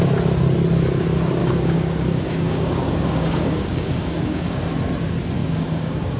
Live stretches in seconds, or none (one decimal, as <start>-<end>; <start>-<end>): 0.0-1.4; 4.6-5.4

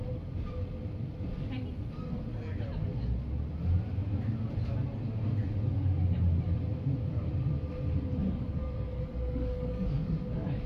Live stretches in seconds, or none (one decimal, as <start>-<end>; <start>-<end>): 0.0-8.2

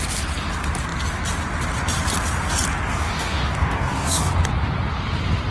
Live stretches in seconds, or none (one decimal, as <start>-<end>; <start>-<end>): 0.0-2.9; 4.3-5.5

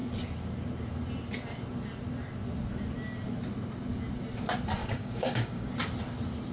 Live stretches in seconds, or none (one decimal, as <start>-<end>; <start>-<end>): 0.0-4.8; 5.7-6.5

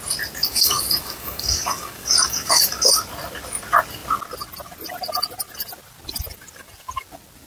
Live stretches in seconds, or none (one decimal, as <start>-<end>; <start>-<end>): 0.0-0.5; 2.9-7.5

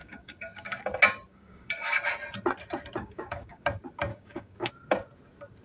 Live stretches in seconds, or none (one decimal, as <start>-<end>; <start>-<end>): 0.8-1.3; 2.0-3.0; 3.6-4.1; 4.7-5.6

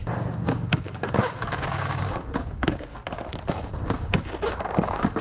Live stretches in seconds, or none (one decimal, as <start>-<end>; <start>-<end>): 3.0-3.5

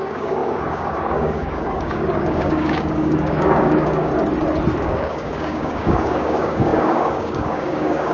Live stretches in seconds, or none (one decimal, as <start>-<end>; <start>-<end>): 4.1-4.8